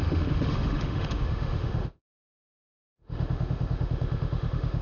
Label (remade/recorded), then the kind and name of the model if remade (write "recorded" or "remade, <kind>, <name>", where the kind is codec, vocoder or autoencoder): remade, autoencoder, DAC-VAE